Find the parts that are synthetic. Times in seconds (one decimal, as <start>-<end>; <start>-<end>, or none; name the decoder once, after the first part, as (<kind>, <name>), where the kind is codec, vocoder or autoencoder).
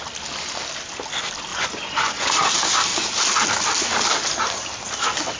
1.5-2.3 (vocoder, Vocos)